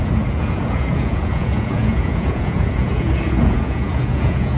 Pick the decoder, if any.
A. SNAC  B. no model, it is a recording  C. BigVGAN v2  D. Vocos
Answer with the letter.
D